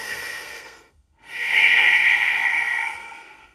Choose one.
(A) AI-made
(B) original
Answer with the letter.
A